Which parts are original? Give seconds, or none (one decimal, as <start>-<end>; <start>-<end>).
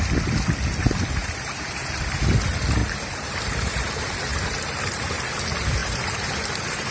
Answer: 0.0-1.2; 2.0-2.8; 3.4-4.3; 5.3-5.8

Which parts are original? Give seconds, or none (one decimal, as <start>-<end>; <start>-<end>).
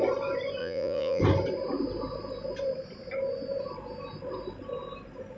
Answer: 0.0-0.6; 1.2-5.4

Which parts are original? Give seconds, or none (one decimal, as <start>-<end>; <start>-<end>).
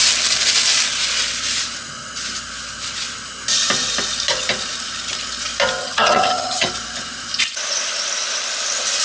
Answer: 0.0-5.8; 6.7-9.0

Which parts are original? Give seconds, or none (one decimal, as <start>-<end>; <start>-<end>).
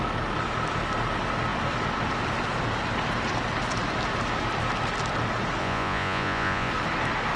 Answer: 0.0-5.6; 6.7-7.4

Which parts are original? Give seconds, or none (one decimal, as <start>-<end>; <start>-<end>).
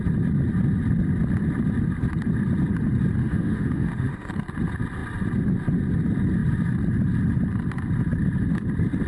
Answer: 0.0-3.2; 4.3-9.1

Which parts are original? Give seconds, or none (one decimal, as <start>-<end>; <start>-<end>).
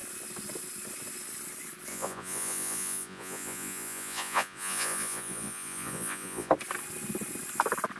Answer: 0.0-1.9; 6.5-8.0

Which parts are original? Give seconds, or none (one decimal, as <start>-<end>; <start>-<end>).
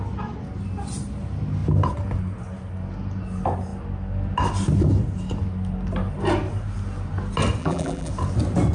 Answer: 0.0-7.6; 8.1-8.7